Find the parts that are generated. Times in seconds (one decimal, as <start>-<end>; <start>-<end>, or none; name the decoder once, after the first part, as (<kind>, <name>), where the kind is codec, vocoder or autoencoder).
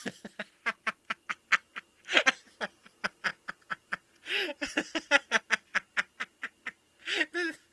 3.3-5.4 (vocoder, Vocos)